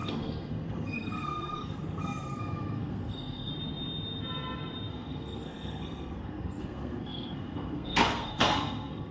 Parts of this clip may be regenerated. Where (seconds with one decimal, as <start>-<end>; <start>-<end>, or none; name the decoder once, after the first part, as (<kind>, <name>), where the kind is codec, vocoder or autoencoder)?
0.0-3.5 (codec, SNAC); 4.9-9.1